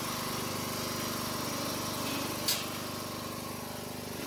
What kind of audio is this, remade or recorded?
recorded